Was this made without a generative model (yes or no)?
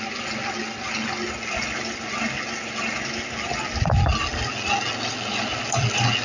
yes